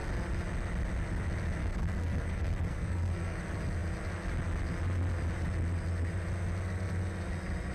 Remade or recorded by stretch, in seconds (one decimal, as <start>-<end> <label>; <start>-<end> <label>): 0.0-1.6 recorded; 1.6-3.4 remade; 3.4-7.7 recorded